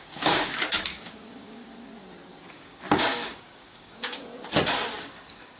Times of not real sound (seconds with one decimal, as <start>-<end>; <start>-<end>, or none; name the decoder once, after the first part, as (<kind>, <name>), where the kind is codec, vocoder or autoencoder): 0.0-1.9 (codec, DAC); 2.5-4.2; 5.0-5.6